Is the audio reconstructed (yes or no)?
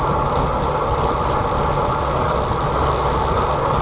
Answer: no